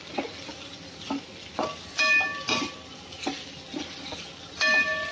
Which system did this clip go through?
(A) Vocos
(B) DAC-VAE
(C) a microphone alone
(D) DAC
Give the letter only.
C